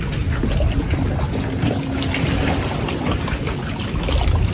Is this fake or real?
real